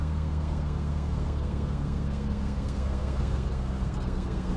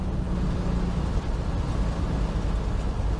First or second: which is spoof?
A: first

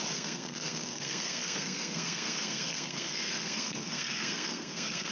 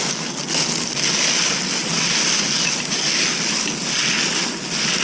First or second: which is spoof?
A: first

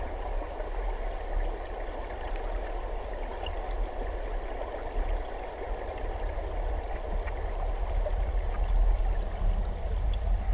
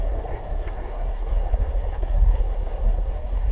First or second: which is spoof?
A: second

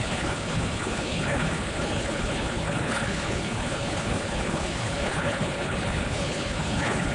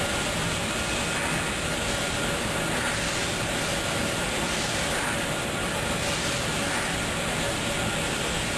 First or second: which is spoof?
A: first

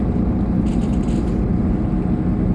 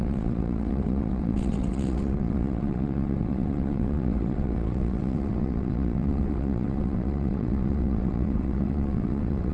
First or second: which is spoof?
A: second